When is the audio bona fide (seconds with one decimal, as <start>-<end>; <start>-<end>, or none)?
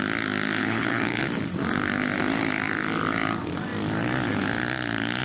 0.0-0.6; 1.2-5.2